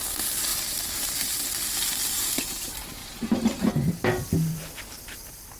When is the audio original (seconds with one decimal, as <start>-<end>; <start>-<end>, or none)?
0.0-0.5; 1.3-3.0; 3.7-4.5